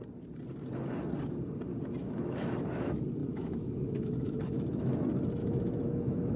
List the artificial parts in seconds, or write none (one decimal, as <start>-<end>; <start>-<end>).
2.0-2.5; 3.2-5.0; 5.4-6.4